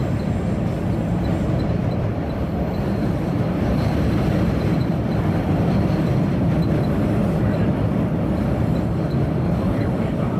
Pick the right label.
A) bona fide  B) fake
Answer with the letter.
B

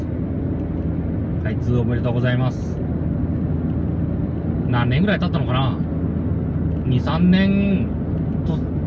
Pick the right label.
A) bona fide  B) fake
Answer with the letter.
A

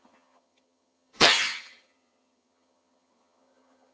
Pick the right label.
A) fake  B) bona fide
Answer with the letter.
A